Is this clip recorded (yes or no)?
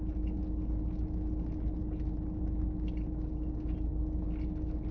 yes